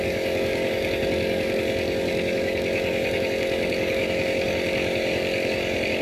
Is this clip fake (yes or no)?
yes